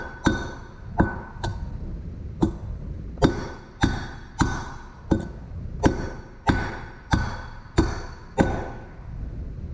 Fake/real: real